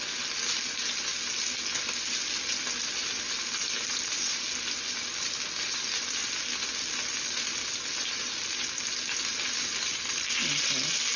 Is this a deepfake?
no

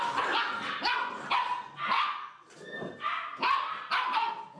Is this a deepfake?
no